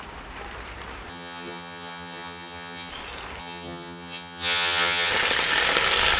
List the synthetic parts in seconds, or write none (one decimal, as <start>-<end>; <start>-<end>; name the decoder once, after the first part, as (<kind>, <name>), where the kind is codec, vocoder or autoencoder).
1.1-2.9 (vocoder, HiFi-GAN); 3.4-5.1